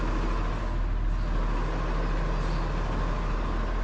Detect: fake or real real